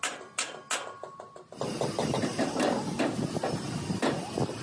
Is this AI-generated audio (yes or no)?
no